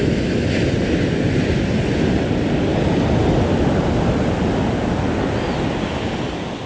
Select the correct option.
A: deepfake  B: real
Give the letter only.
B